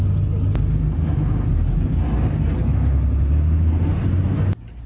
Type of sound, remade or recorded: recorded